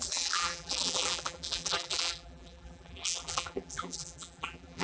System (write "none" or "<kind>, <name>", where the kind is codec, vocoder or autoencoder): vocoder, BigVGAN v2